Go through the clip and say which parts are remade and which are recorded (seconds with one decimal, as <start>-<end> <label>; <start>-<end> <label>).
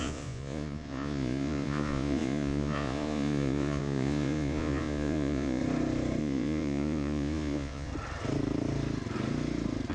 0.0-5.6 remade; 5.6-6.2 recorded; 6.2-7.9 remade; 7.9-9.9 recorded